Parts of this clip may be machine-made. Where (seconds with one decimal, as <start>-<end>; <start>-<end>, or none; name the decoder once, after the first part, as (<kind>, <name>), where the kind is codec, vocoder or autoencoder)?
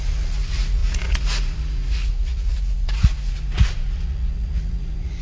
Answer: 0.0-5.2 (vocoder, Vocos)